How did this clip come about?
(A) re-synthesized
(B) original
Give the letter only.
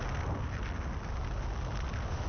B